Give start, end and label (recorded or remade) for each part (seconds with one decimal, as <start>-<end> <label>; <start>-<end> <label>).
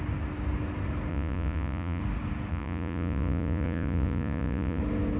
0.0-1.1 recorded; 1.1-2.0 remade; 2.0-2.5 recorded; 2.5-4.8 remade; 4.8-5.2 recorded